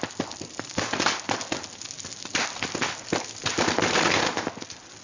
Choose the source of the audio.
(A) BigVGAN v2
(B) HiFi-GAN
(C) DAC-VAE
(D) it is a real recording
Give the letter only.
D